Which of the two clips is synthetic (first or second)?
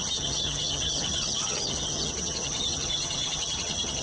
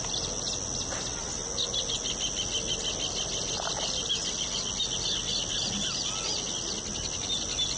first